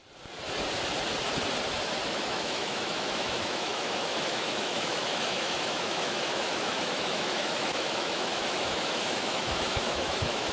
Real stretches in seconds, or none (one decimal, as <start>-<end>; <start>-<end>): 0.0-2.1